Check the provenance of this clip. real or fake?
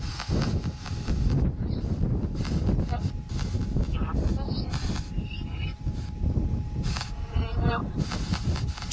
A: real